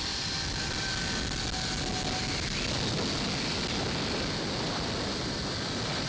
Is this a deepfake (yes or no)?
no